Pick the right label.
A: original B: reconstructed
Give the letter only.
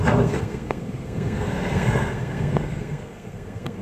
B